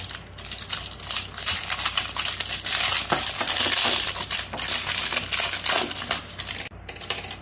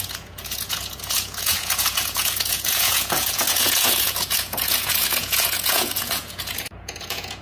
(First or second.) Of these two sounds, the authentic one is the first